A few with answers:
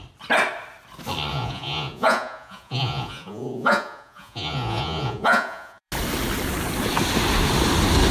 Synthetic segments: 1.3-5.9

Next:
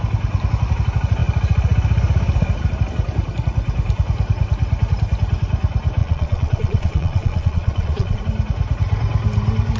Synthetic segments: 6.0-8.2

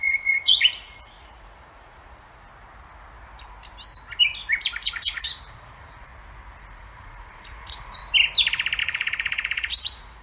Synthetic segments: 0.0-2.5; 4.9-6.1; 6.6-8.0; 8.8-10.2